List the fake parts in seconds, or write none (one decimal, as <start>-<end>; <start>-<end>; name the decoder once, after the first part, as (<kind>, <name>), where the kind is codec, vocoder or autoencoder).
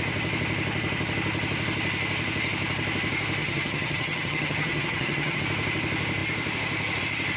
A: 3.4-5.4 (vocoder, HiFi-GAN)